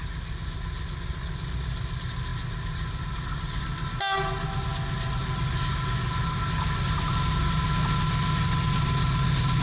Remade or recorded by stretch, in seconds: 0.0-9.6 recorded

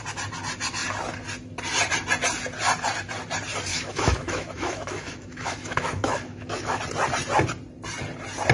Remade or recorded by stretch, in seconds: 0.0-3.7 recorded; 3.7-6.8 remade; 6.8-8.5 recorded